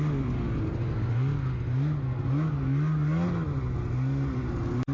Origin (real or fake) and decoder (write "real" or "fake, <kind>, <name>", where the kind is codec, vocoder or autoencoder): real